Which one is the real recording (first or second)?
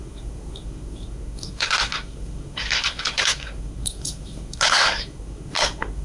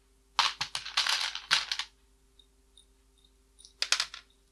second